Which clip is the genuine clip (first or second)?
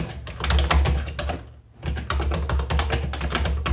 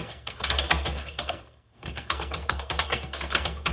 first